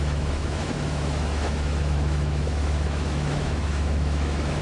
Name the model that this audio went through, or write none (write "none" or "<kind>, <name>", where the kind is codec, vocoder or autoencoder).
autoencoder, DAC-VAE